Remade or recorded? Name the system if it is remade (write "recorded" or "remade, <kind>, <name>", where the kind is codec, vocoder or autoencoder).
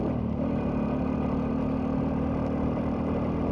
recorded